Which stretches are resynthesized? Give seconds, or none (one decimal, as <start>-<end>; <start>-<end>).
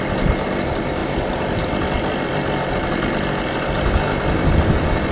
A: none